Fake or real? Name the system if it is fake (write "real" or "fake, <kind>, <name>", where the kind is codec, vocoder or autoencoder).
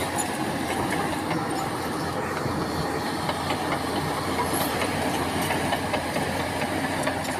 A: fake, vocoder, BigVGAN v2